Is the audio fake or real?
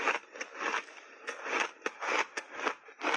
real